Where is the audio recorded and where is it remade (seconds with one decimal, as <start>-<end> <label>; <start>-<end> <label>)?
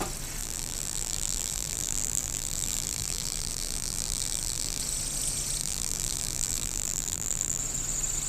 0.0-0.4 recorded; 0.4-4.8 remade; 4.8-5.6 recorded; 5.6-7.6 remade; 7.6-8.3 recorded